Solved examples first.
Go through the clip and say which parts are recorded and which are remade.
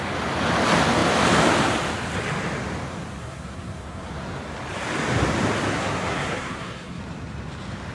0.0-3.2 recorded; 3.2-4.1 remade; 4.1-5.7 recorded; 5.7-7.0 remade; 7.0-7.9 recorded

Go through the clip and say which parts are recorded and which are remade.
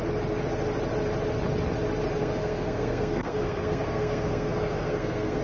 0.0-2.2 recorded; 2.2-5.4 remade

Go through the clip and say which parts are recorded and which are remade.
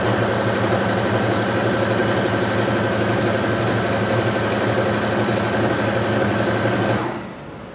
0.0-7.7 recorded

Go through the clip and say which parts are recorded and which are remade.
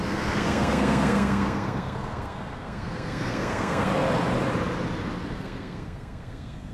0.0-3.9 remade; 3.9-5.3 recorded; 5.3-6.7 remade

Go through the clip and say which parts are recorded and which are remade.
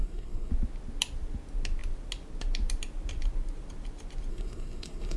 0.0-0.5 remade; 0.5-4.3 recorded; 4.3-5.2 remade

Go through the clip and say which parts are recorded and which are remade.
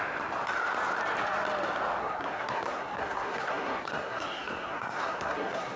0.0-2.0 recorded; 2.0-5.8 remade